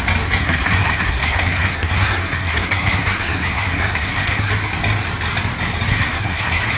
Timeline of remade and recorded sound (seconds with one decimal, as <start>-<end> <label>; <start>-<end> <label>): 0.0-0.4 recorded; 0.4-4.5 remade; 4.5-5.9 recorded; 5.9-6.8 remade